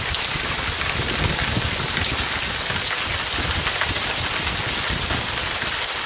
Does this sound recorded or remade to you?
recorded